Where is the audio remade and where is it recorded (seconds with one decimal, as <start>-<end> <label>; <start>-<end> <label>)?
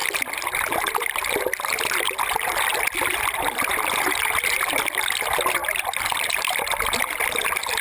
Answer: 0.0-7.8 recorded